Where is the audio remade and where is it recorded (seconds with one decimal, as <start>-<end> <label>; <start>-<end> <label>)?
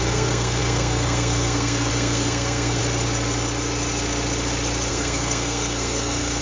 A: 0.0-2.8 remade; 2.8-4.9 recorded; 4.9-6.4 remade